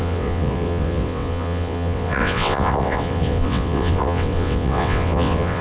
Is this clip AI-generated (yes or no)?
yes